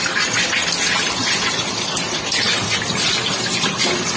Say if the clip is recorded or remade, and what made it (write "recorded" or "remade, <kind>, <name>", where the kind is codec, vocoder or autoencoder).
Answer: recorded